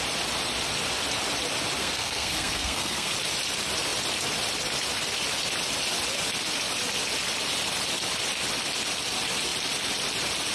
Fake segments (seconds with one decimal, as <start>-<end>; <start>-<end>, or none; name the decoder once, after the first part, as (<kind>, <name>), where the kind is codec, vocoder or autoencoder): 1.8-3.1 (codec, SNAC)